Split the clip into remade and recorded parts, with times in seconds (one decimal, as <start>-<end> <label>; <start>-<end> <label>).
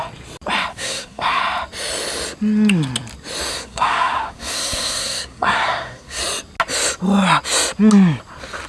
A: 0.0-0.7 recorded; 0.7-1.4 remade; 1.4-3.5 recorded; 3.5-6.2 remade; 6.2-8.7 recorded